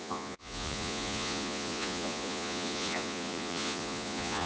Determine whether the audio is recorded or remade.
remade